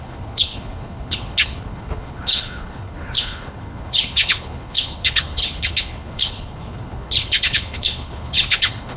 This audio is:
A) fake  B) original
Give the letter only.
A